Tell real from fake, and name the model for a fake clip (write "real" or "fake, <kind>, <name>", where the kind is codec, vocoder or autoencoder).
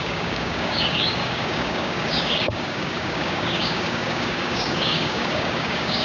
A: fake, codec, DAC